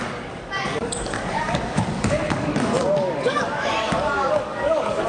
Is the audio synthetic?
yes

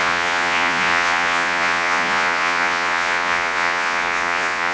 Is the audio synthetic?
yes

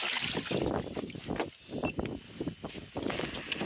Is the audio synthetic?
no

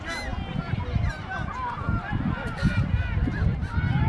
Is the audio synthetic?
no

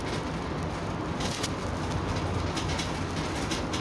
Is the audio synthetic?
no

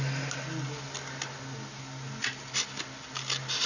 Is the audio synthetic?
no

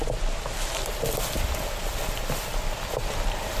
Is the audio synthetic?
yes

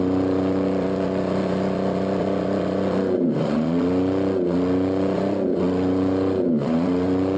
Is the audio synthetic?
yes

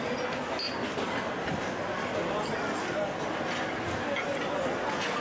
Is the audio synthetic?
no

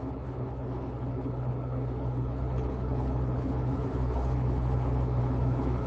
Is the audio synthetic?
yes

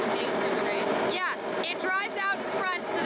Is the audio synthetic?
no